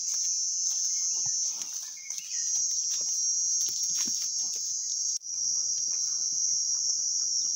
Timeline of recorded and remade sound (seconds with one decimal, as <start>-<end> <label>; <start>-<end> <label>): 0.0-4.9 recorded; 4.9-7.6 remade